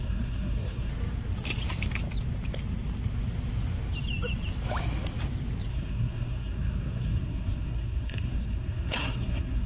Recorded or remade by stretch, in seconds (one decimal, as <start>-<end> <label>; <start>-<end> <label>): 0.0-0.9 remade; 0.9-5.7 recorded; 5.7-9.7 remade